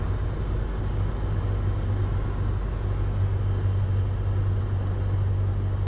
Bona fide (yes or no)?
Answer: yes